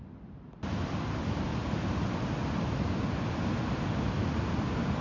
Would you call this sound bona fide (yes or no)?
yes